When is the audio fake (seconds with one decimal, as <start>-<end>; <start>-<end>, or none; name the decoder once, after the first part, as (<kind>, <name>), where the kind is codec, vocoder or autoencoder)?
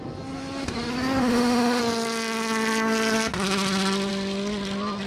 1.2-1.8 (autoencoder, DAC-VAE)